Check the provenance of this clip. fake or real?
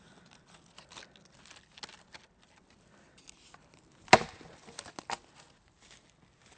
real